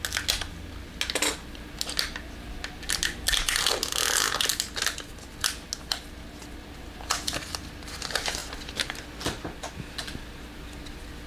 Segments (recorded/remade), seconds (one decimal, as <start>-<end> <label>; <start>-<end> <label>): 0.0-11.3 recorded